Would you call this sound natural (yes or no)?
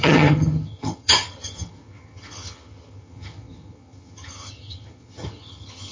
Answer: no